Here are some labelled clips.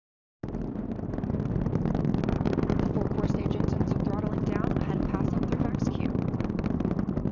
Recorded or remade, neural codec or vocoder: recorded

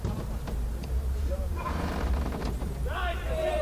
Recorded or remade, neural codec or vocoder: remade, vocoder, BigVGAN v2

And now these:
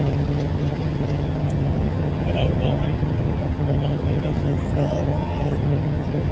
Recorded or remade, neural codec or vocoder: remade, vocoder, HiFi-GAN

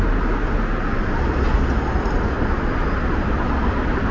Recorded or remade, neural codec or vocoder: recorded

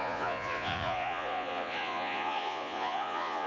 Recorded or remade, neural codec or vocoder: remade, vocoder, Vocos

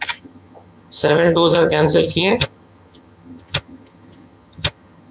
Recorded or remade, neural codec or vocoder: remade, vocoder, HiFi-GAN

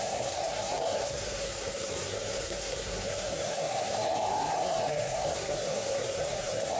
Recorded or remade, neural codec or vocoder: remade, codec, SNAC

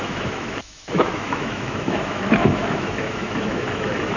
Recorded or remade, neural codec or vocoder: remade, autoencoder, DAC-VAE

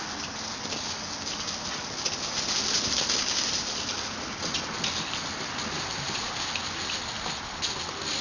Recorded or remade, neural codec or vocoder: recorded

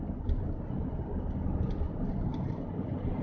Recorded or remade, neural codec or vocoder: recorded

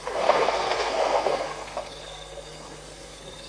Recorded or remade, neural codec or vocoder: remade, codec, SNAC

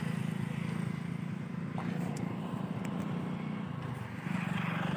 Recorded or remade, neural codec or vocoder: recorded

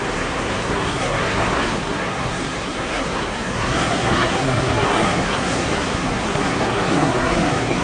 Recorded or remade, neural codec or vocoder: remade, codec, SNAC